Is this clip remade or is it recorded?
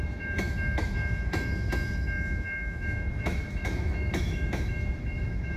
remade